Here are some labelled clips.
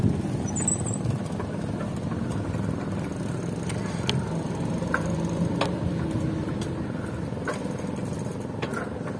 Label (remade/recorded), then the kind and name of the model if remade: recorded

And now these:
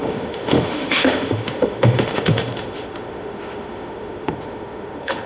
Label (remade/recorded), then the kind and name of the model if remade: remade, autoencoder, DAC-VAE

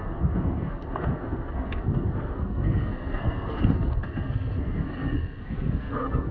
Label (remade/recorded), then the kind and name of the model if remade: remade, codec, SNAC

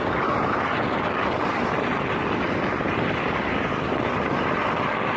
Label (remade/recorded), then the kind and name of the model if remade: recorded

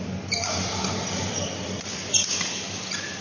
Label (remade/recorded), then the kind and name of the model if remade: recorded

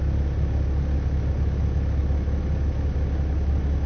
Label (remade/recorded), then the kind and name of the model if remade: recorded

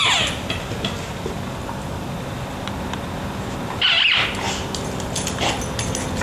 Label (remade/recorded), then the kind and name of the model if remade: recorded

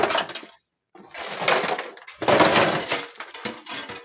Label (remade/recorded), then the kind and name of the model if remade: recorded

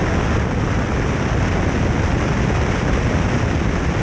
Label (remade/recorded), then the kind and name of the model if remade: recorded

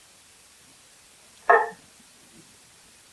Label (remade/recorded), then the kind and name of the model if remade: remade, vocoder, BigVGAN v2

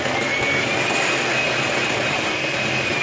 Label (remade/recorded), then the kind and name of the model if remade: recorded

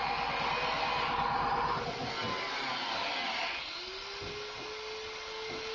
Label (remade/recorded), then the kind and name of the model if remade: recorded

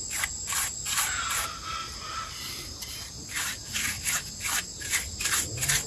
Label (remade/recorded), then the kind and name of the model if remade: recorded